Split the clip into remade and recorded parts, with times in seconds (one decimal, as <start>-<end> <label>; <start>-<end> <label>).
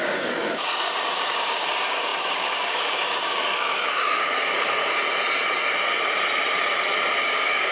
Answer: 0.0-5.0 remade; 5.0-7.2 recorded; 7.2-7.7 remade